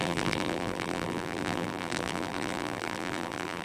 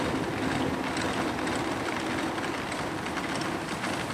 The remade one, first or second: first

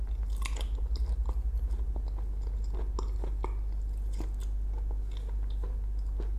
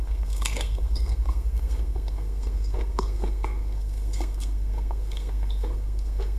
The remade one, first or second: second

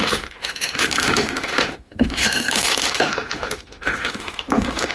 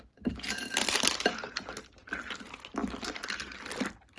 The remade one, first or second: first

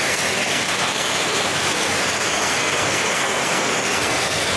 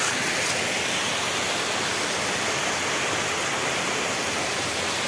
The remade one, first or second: first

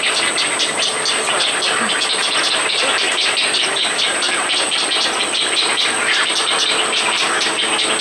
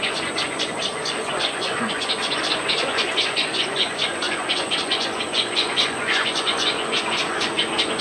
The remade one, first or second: second